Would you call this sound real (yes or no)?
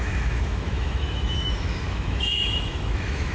no